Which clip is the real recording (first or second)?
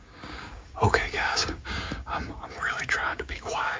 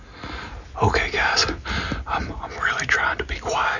second